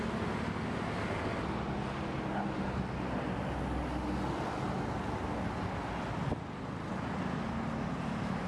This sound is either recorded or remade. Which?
recorded